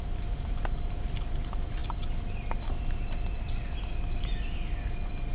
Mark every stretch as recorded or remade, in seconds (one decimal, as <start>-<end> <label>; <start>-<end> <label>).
0.0-5.3 recorded